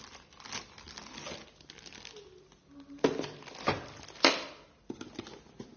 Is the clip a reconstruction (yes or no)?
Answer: no